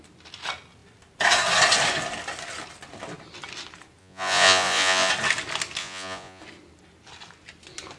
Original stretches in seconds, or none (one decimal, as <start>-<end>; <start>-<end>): 0.0-4.0; 5.1-5.8; 6.4-8.0